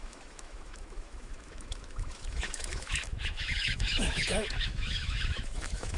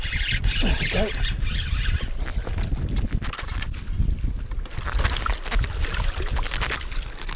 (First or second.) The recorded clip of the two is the second